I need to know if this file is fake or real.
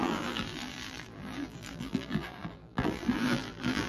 fake